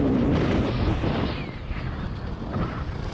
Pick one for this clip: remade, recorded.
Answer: recorded